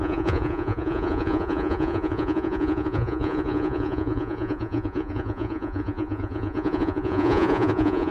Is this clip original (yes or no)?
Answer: no